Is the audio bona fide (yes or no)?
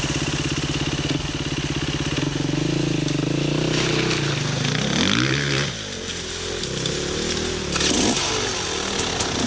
yes